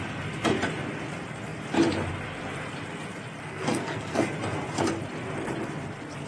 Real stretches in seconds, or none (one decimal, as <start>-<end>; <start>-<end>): 0.0-3.4; 4.2-6.3